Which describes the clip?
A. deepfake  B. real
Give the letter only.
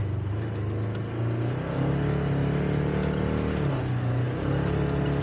B